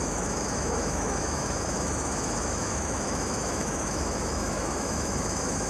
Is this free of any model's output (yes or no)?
no